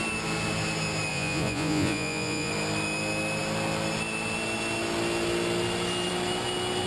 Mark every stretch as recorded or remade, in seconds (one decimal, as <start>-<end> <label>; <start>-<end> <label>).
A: 0.0-1.1 recorded; 1.1-2.5 remade; 2.5-6.9 recorded